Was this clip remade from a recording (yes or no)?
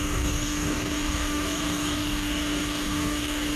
yes